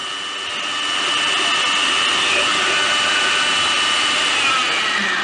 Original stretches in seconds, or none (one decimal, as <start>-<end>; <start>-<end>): 0.0-3.1